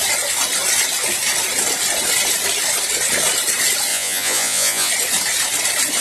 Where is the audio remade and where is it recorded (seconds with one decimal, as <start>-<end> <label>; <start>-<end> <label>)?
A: 0.0-3.9 recorded; 3.9-4.9 remade; 4.9-6.0 recorded